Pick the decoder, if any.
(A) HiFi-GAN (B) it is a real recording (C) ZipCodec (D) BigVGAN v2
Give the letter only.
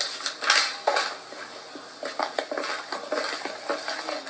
B